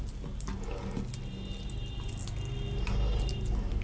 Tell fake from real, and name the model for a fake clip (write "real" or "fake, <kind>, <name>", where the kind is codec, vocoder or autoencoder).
real